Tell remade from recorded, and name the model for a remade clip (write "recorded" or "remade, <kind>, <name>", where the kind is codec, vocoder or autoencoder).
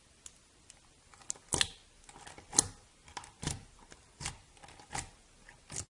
recorded